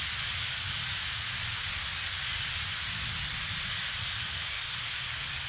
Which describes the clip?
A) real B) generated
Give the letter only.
A